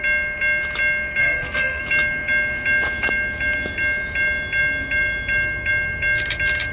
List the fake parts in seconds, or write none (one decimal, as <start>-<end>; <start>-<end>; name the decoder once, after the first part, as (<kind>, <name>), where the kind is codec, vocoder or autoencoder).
1.2-1.8 (codec, SNAC)